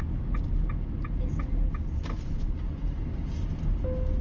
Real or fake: real